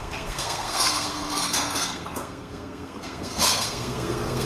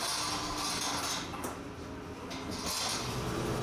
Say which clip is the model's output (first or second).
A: first